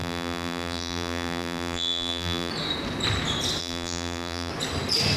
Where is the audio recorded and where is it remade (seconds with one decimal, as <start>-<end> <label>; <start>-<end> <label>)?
0.0-2.5 remade; 2.5-3.6 recorded; 3.6-4.5 remade; 4.5-5.2 recorded